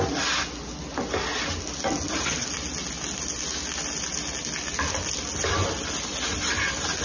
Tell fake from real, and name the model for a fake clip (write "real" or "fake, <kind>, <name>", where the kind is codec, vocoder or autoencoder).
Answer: real